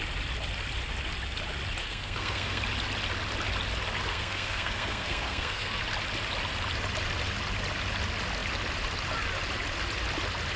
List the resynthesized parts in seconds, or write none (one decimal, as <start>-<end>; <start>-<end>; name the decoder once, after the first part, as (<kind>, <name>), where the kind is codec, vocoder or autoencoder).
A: 1.8-2.6 (codec, SNAC); 4.1-5.8

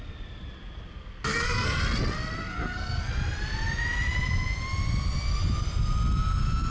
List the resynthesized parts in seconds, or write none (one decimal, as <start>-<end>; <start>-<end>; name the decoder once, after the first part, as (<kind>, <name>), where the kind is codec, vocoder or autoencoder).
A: 1.3-1.8 (codec, SNAC); 2.4-3.1